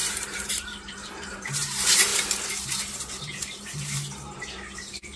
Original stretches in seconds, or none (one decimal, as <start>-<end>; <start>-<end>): 2.1-2.6